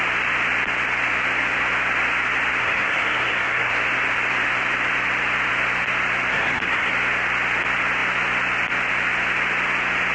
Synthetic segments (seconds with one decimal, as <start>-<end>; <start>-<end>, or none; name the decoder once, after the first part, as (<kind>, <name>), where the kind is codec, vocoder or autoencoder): 2.6-3.7 (codec, SNAC); 6.3-6.9